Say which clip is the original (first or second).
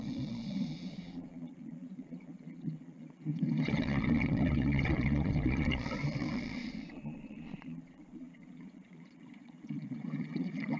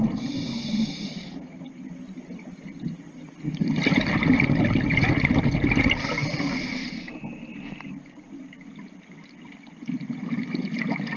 second